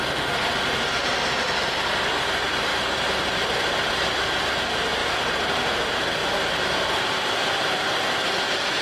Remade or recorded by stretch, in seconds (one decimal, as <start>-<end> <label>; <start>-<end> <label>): 0.0-5.0 recorded; 5.0-5.8 remade; 5.8-6.2 recorded; 6.2-8.0 remade; 8.0-8.8 recorded